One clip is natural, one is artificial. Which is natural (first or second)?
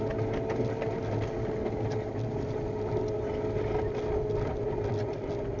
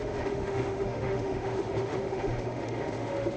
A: first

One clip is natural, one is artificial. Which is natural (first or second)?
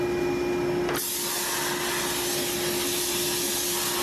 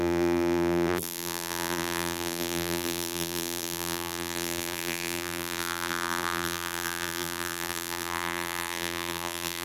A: first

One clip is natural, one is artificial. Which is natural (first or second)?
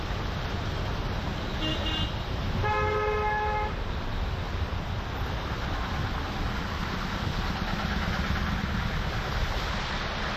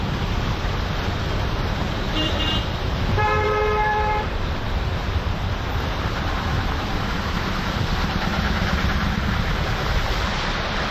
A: first